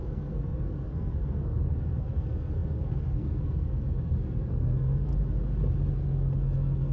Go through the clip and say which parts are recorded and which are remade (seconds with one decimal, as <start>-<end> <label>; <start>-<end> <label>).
0.0-5.1 remade; 5.1-5.9 recorded; 5.9-6.9 remade